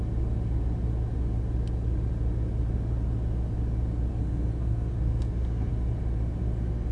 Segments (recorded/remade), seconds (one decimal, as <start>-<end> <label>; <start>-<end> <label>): 0.0-4.1 recorded; 4.1-5.7 remade; 5.7-6.4 recorded; 6.4-6.9 remade